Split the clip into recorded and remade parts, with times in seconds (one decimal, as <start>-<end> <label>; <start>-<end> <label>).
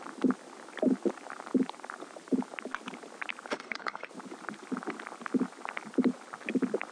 0.0-3.5 recorded; 3.5-4.1 remade; 4.1-6.9 recorded